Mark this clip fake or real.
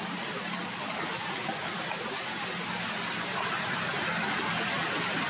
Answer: real